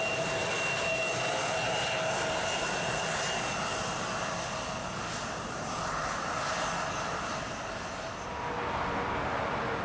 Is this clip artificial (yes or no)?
no